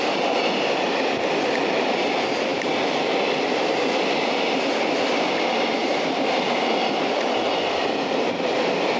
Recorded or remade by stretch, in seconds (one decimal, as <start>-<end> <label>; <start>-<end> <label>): 0.0-9.0 recorded

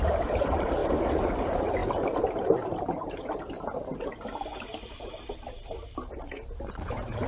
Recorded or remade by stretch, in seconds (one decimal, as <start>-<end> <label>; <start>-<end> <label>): 0.0-7.3 remade

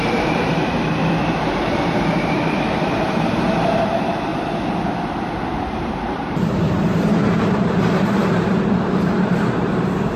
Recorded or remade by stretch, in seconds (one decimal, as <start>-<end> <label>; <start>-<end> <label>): 0.0-4.3 remade; 4.3-5.7 recorded; 5.7-10.2 remade

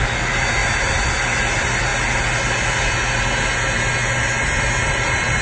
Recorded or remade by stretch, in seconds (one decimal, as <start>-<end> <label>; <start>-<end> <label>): 0.0-5.4 recorded